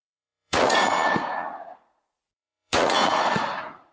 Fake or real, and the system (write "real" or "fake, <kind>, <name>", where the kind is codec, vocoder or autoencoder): fake, vocoder, Vocos